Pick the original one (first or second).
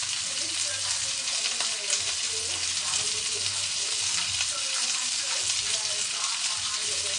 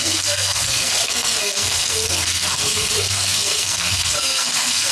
first